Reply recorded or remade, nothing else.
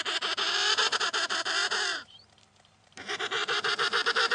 remade